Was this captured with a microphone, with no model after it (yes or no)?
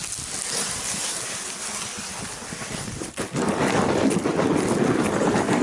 yes